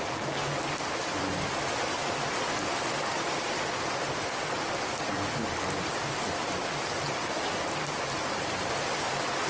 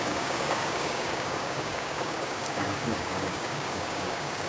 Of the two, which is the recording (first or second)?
first